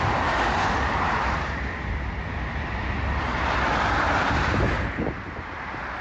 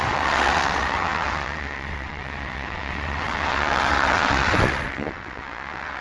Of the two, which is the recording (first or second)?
first